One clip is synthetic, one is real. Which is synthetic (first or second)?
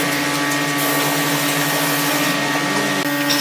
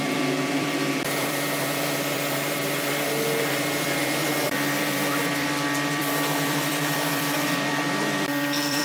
second